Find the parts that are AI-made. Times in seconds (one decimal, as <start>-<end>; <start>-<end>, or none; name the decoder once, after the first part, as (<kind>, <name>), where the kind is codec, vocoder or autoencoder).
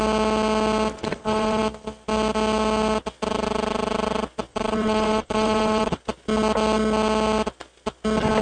1.1-1.6 (vocoder, WaveNeXt); 4.5-6.0